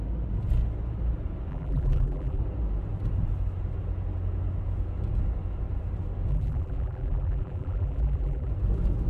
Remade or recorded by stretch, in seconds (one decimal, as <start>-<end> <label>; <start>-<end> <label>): 0.0-1.5 recorded; 1.5-2.4 remade; 2.4-6.3 recorded; 6.3-8.5 remade; 8.5-9.1 recorded

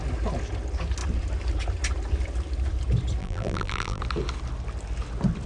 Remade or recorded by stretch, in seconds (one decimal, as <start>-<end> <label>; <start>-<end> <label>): 0.0-3.2 recorded; 3.2-4.0 remade; 4.0-5.5 recorded

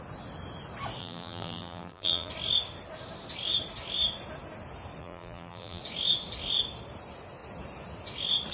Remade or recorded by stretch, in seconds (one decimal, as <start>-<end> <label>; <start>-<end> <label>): 0.0-1.0 recorded; 1.0-2.3 remade; 2.3-5.0 recorded; 5.0-5.8 remade; 5.8-8.5 recorded

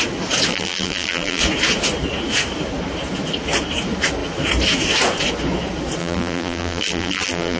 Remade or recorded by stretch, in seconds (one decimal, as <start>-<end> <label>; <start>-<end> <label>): 0.0-0.5 recorded; 0.5-1.4 remade; 1.4-6.0 recorded; 6.0-7.6 remade

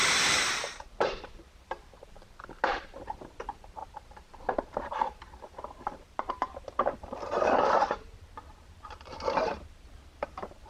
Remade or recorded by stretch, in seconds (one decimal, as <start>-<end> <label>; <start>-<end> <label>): 0.0-10.7 remade

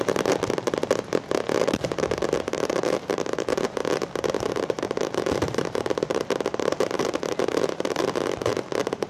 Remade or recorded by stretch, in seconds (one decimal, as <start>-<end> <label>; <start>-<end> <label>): 0.0-0.8 remade; 0.8-1.6 recorded; 1.6-3.8 remade; 3.8-4.5 recorded; 4.5-9.1 remade

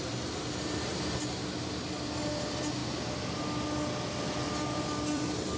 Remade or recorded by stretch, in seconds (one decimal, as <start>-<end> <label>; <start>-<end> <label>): 0.0-2.8 remade; 2.8-4.1 recorded; 4.1-5.6 remade

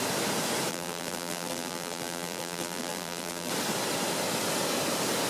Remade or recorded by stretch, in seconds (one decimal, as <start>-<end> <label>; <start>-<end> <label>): 0.0-0.7 recorded; 0.7-3.5 remade; 3.5-5.3 recorded